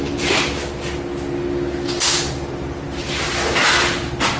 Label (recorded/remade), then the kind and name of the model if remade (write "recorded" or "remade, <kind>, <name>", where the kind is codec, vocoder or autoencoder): recorded